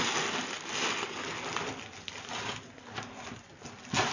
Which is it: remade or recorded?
recorded